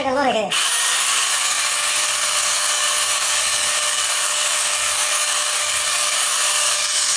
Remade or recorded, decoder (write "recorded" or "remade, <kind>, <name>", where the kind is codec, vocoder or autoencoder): remade, codec, DAC